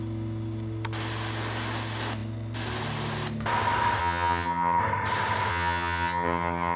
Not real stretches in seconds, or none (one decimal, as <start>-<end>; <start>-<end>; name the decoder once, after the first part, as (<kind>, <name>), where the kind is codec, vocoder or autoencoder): 4.0-4.8 (vocoder, HiFi-GAN); 5.5-6.8